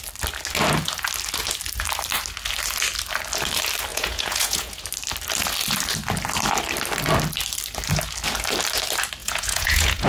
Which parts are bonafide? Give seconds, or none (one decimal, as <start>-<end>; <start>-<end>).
0.0-3.9; 4.8-9.2